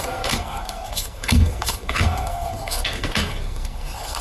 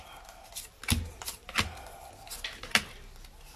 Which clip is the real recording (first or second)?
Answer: second